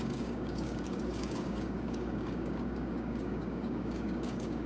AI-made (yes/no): yes